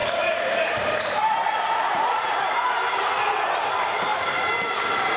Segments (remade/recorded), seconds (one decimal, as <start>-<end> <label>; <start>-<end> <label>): 0.0-3.1 remade; 3.1-5.2 recorded